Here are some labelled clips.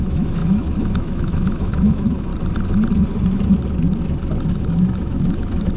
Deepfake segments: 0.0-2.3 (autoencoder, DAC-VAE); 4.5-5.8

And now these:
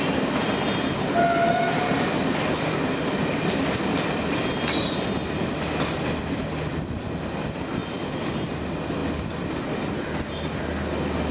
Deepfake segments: none

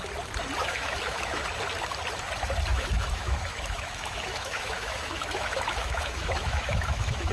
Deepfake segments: 0.6-1.4 (autoencoder, DAC-VAE); 2.7-7.3

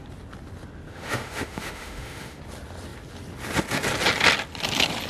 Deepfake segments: 0.9-2.4 (autoencoder, DAC-VAE)

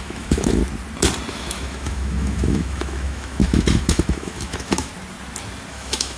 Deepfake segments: 0.0-0.6 (autoencoder, DAC-VAE); 1.3-4.9; 5.7-6.2

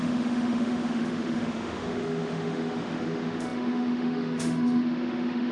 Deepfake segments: 0.0-5.5 (autoencoder, DAC-VAE)

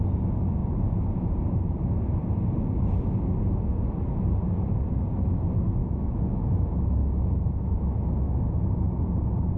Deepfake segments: 5.8-8.4 (autoencoder, DAC-VAE)

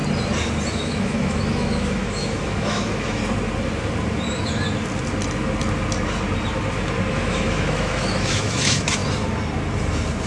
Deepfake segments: 0.7-3.2 (autoencoder, DAC-VAE); 7.1-9.0